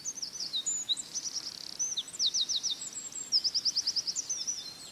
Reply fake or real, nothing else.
real